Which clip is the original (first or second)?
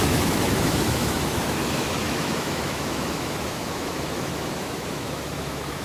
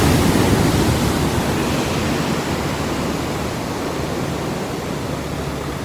second